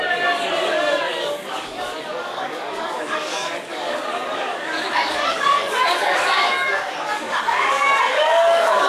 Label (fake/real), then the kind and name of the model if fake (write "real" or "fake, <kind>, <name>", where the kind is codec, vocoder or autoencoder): fake, codec, DAC